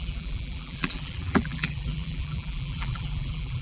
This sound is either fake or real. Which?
fake